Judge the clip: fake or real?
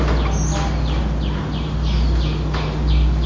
real